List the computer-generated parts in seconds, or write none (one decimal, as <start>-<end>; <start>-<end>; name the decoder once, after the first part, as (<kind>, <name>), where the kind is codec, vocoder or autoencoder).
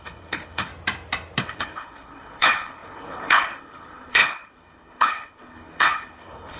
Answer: 0.0-0.7 (codec, HILCodec); 1.4-6.6